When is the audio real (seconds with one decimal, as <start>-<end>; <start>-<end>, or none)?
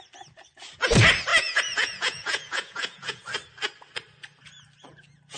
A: 0.0-1.3; 3.2-5.4